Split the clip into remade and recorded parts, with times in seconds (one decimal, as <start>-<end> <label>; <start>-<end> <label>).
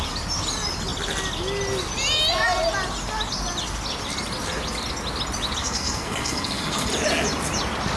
0.0-5.6 recorded; 5.6-6.9 remade; 6.9-8.0 recorded